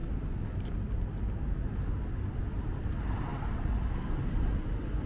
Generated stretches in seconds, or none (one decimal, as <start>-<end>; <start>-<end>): none